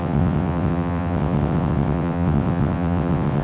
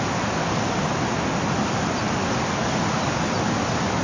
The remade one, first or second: first